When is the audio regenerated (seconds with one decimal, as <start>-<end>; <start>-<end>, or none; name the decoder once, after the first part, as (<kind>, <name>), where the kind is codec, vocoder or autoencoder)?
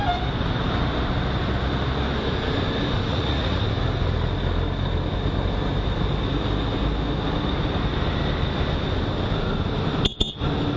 3.1-3.6 (vocoder, Vocos)